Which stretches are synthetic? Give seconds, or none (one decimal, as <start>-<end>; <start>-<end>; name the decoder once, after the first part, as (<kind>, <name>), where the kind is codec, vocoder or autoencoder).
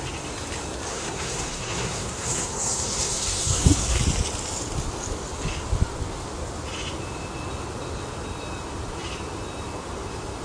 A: 0.9-4.0 (codec, SNAC)